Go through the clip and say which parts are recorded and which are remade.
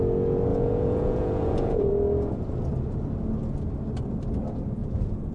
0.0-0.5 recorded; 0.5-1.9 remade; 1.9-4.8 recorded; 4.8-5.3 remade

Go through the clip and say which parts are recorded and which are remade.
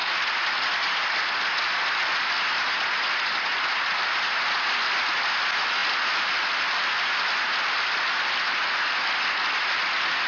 0.0-10.3 recorded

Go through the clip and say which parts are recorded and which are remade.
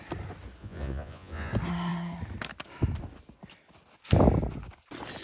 0.0-0.6 recorded; 0.6-1.5 remade; 1.5-5.2 recorded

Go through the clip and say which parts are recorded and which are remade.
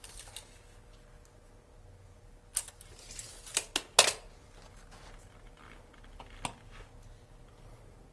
0.0-8.1 recorded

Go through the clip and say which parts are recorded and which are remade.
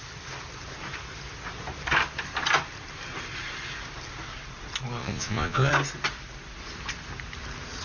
0.0-5.0 recorded; 5.0-5.7 remade; 5.7-7.8 recorded